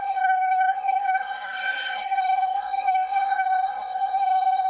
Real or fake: fake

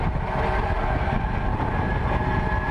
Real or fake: real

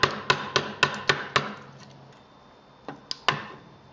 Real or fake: real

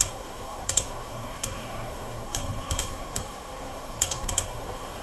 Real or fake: fake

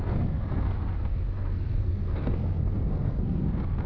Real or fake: fake